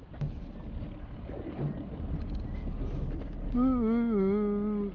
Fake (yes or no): no